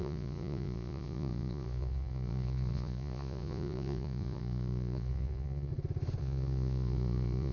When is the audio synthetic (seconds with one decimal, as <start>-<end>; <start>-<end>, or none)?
0.0-5.7; 6.2-7.5